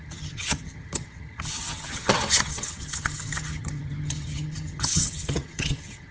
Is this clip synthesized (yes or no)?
yes